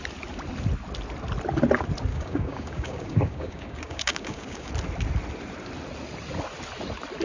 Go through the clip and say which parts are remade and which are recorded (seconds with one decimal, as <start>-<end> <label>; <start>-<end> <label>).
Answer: 0.0-2.1 recorded; 2.1-4.7 remade; 4.7-7.2 recorded